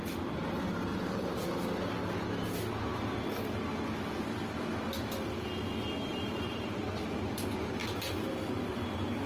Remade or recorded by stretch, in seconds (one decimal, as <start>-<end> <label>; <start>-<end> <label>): 0.0-0.9 recorded; 0.9-1.5 remade; 1.5-6.1 recorded; 6.1-6.8 remade; 6.8-9.3 recorded